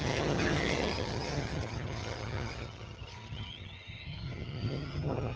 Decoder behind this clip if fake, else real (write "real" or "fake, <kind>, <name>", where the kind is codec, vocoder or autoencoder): fake, vocoder, HiFi-GAN